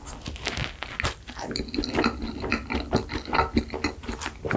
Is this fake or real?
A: real